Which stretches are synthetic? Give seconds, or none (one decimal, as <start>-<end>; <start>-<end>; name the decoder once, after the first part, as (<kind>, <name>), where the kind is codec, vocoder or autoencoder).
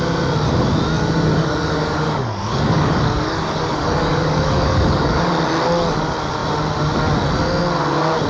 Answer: 1.3-5.3 (codec, DAC)